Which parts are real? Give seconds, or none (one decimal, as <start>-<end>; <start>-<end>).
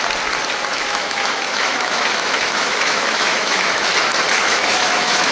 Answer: 0.0-0.7; 3.9-4.4